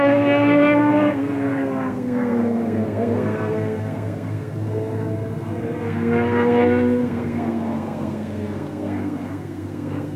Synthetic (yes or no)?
yes